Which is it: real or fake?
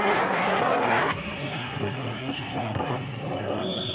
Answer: fake